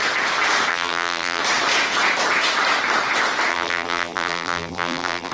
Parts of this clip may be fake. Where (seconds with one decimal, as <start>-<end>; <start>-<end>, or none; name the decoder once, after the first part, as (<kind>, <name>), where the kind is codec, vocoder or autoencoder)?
0.7-1.4 (vocoder, BigVGAN v2); 3.5-5.3